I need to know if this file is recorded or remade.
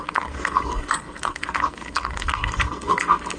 remade